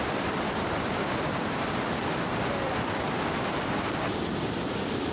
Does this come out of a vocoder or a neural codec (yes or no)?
yes